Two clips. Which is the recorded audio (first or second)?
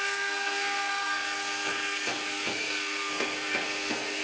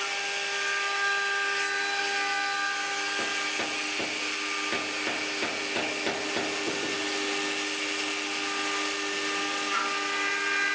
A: second